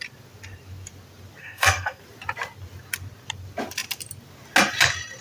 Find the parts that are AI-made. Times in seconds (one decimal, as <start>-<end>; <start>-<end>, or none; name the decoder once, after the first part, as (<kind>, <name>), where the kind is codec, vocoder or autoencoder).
1.4-2.0 (codec, SNAC)